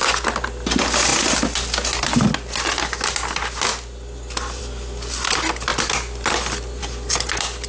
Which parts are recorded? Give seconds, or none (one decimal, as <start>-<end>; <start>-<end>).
0.0-7.7

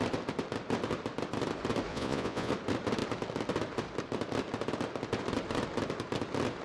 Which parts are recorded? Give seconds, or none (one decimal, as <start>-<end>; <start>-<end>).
0.0-1.9; 2.5-6.6

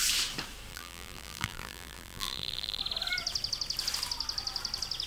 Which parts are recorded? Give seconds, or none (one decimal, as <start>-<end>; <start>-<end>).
0.0-0.7; 2.8-5.1

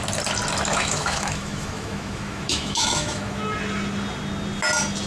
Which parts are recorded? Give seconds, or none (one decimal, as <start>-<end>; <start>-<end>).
0.0-0.7; 3.4-5.1

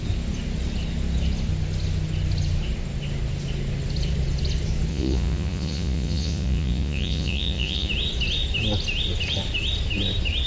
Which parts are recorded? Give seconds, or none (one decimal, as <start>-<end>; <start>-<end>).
0.0-4.9; 7.9-10.5

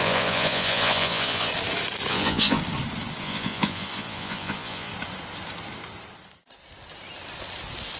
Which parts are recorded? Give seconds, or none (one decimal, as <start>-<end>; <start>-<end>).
1.5-2.1; 2.6-3.2; 4.9-8.0

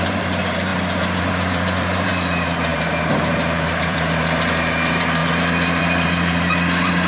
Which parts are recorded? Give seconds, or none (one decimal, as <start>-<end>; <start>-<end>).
5.2-5.8

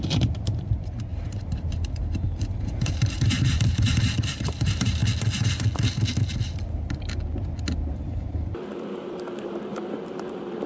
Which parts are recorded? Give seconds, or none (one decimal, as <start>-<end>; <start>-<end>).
5.0-7.9